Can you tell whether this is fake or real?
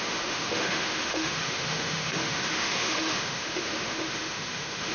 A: fake